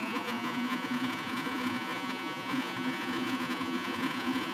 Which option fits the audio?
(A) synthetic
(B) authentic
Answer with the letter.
A